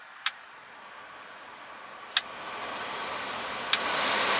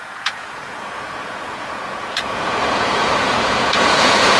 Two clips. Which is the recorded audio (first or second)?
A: first